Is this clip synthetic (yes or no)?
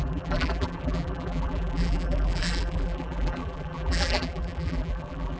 yes